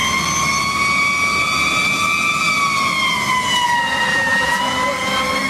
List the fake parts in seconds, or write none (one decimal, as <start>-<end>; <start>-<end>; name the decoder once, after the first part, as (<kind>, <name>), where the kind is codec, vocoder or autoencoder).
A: 4.1-4.6 (vocoder, BigVGAN v2)